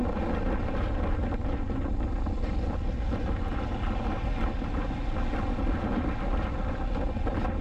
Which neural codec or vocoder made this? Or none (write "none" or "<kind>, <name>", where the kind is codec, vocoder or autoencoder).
none